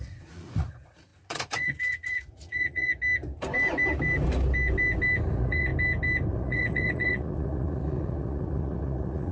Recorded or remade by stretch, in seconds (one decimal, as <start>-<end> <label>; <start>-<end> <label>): 0.0-2.9 remade; 2.9-5.3 recorded; 5.3-5.7 remade; 5.7-6.3 recorded; 6.3-9.3 remade